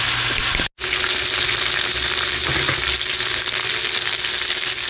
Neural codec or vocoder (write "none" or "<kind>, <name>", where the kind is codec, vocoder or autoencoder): none